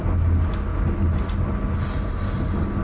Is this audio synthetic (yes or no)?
no